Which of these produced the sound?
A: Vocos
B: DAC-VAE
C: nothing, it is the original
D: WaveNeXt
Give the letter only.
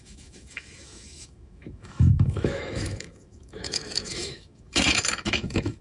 B